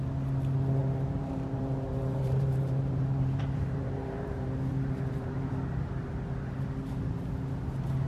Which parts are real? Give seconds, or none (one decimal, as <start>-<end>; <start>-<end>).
0.0-0.8; 5.5-8.1